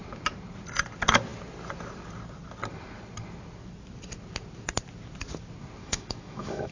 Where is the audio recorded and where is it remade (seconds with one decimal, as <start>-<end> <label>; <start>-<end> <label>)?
0.0-5.8 recorded; 5.8-6.7 remade

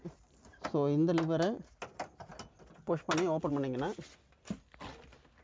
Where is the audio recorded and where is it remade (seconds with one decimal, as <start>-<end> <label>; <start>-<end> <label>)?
0.0-5.4 recorded

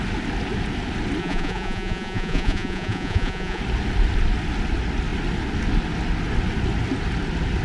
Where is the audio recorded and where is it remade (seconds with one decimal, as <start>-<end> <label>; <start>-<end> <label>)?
0.0-1.2 recorded; 1.2-3.6 remade; 3.6-7.6 recorded